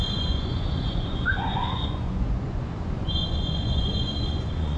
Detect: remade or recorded remade